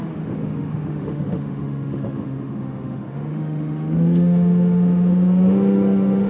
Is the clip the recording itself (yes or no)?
no